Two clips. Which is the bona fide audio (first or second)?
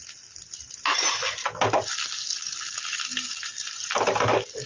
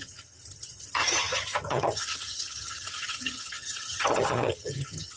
first